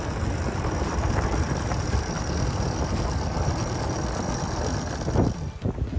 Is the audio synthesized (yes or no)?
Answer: no